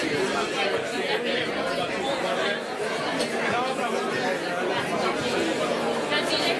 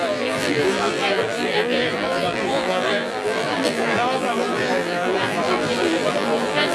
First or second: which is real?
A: first